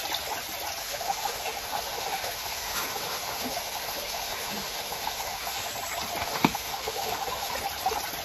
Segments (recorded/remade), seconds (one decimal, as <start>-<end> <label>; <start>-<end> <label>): 0.0-0.8 recorded; 0.8-5.7 remade; 5.7-6.2 recorded; 6.2-7.5 remade; 7.5-8.2 recorded